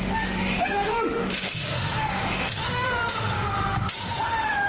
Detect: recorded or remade remade